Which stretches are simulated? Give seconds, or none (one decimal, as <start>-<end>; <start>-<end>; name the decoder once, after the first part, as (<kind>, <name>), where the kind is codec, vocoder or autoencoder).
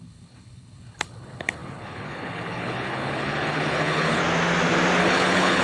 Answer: 0.0-4.2 (codec, HILCodec); 5.0-5.6